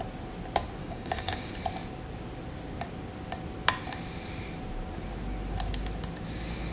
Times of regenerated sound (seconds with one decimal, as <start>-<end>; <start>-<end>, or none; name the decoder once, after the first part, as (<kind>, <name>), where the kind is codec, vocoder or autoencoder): 0.8-1.5 (codec, DAC)